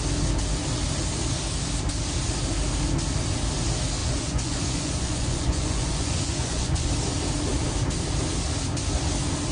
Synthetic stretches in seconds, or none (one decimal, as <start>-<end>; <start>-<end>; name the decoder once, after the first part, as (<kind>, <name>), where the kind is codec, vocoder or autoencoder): 4.0-6.9 (vocoder, Vocos)